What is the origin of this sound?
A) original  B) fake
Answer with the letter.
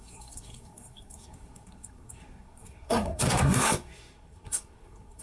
B